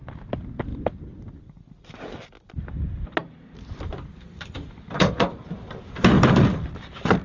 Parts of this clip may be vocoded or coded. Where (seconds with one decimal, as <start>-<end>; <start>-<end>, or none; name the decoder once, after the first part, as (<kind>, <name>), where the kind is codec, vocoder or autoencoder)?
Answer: 0.7-2.8 (vocoder, BigVGAN v2); 3.2-7.2